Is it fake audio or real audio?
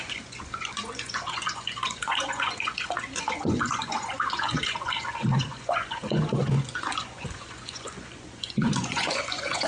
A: fake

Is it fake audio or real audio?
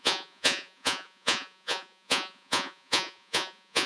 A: fake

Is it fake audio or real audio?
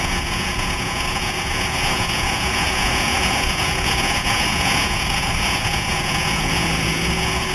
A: fake